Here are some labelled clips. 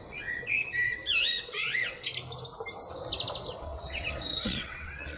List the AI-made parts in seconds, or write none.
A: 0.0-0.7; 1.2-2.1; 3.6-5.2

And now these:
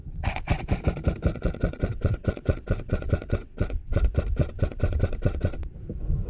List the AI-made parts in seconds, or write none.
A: 0.0-0.8; 1.3-4.0; 4.4-5.7

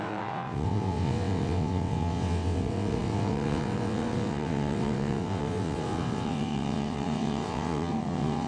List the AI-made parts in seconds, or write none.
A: 0.0-8.5

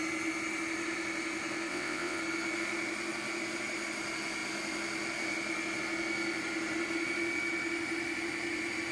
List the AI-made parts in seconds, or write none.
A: 1.7-2.2